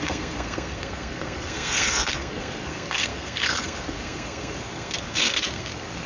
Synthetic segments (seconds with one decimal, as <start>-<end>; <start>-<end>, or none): 0.0-6.1